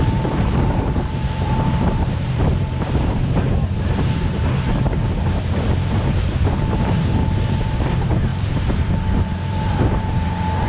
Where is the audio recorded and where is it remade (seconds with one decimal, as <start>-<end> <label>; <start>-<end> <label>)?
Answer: 0.0-4.7 remade; 4.7-5.4 recorded; 5.4-10.7 remade